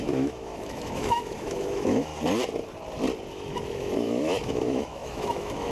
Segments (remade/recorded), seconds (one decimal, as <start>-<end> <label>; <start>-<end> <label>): 0.0-2.1 remade; 2.1-3.3 recorded; 3.3-5.7 remade

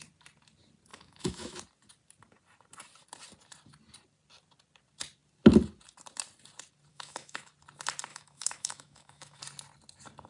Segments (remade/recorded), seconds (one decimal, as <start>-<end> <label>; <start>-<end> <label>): 0.0-0.9 recorded; 0.9-1.6 remade; 1.6-6.9 recorded; 6.9-7.5 remade; 7.5-8.1 recorded; 8.1-9.4 remade; 9.4-10.3 recorded